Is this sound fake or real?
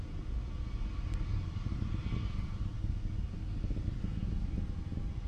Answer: real